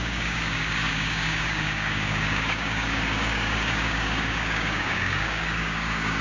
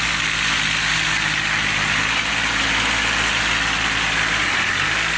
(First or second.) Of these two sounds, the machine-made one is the first